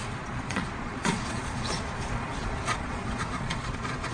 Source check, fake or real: fake